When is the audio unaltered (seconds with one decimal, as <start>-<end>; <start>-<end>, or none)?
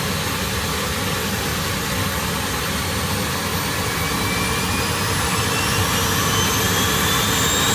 0.0-7.7